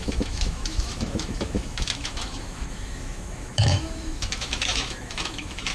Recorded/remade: remade